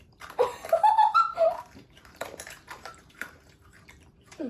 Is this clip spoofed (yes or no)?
yes